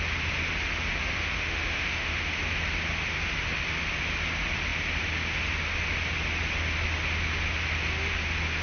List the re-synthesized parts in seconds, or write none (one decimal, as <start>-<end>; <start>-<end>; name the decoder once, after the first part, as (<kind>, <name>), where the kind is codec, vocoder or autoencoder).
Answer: 1.0-2.4 (autoencoder, DAC-VAE)